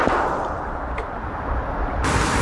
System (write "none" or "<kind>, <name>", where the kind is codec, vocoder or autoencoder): none